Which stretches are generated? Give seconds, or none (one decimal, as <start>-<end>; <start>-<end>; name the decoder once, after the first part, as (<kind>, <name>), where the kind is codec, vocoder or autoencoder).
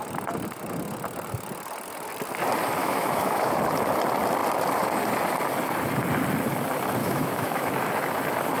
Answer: 2.8-3.6 (autoencoder, DAC-VAE); 7.0-7.7